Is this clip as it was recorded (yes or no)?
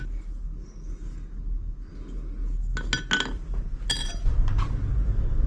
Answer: yes